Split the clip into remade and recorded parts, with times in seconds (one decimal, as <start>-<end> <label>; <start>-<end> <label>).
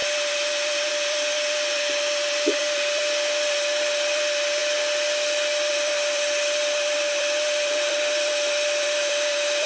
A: 0.0-4.6 remade; 4.6-5.7 recorded; 5.7-9.7 remade